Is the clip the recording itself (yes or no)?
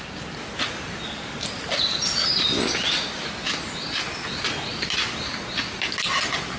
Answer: yes